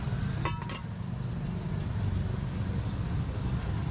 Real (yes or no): yes